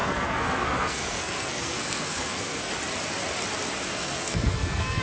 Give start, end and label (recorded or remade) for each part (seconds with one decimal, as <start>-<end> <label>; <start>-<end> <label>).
0.0-2.7 remade; 2.7-3.9 recorded; 3.9-5.0 remade